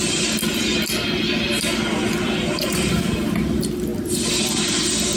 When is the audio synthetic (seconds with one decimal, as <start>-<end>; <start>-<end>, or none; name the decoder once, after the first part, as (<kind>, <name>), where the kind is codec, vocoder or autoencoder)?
none